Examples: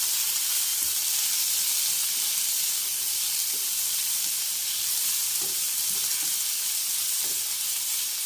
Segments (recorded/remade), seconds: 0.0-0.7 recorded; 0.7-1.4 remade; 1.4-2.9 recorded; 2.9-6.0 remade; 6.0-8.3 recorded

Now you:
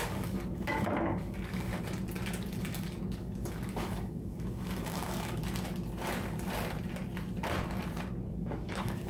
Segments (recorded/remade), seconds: 0.0-1.7 remade; 1.7-2.6 recorded; 2.6-5.4 remade; 5.4-8.3 recorded; 8.3-9.1 remade

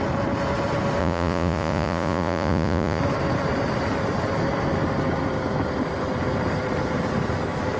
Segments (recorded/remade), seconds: 0.0-1.0 recorded; 1.0-3.0 remade; 3.0-7.8 recorded

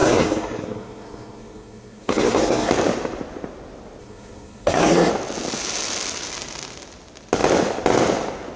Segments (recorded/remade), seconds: 0.0-2.7 remade; 2.7-4.0 recorded; 4.0-5.1 remade; 5.1-8.6 recorded

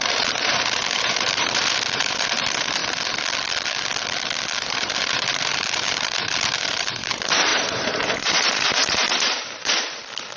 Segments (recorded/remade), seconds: 0.0-2.8 remade; 2.8-4.7 recorded; 4.7-10.4 remade